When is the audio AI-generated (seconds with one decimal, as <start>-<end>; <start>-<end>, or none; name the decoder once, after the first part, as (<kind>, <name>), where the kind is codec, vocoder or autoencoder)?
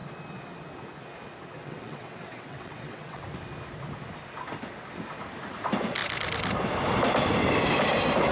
1.6-3.2 (vocoder, WaveNeXt)